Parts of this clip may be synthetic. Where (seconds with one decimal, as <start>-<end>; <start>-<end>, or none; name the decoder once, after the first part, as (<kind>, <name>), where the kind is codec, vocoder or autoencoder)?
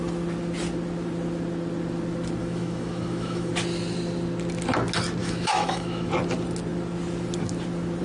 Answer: 2.4-3.5 (autoencoder, DAC-VAE); 5.2-6.1